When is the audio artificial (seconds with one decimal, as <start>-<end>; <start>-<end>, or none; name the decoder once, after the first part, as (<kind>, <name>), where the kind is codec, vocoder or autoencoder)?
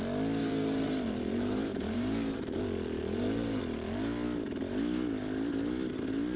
0.4-2.6 (vocoder, BigVGAN v2); 3.0-3.6